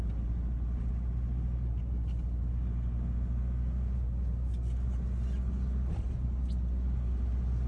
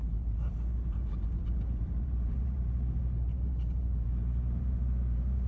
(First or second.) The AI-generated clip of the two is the second